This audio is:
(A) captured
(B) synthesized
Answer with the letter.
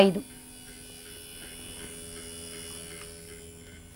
A